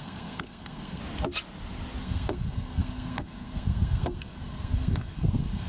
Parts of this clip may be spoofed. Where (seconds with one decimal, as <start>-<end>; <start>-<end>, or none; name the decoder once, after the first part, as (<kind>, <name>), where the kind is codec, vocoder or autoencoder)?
0.0-1.0 (codec, SNAC); 2.0-5.7